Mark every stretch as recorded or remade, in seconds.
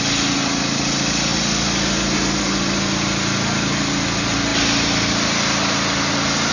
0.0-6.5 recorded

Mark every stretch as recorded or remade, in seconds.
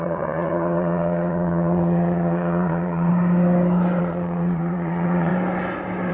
0.0-3.1 remade; 3.1-4.0 recorded; 4.0-5.3 remade; 5.3-6.1 recorded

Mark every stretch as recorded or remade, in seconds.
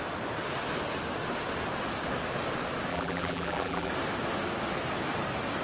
0.0-2.9 recorded; 2.9-3.9 remade; 3.9-5.6 recorded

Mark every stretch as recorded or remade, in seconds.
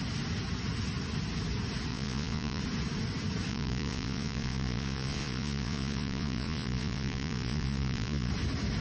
0.0-1.9 recorded; 1.9-2.6 remade; 2.6-3.5 recorded; 3.5-8.3 remade; 8.3-8.8 recorded